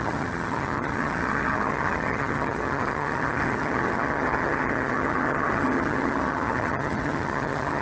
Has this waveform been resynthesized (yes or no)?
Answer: yes